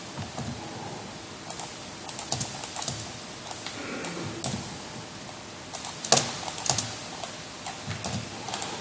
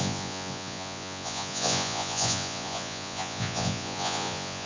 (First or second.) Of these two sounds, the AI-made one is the second